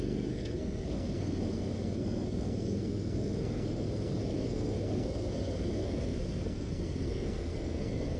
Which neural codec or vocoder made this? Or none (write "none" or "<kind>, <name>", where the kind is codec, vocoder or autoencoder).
codec, SNAC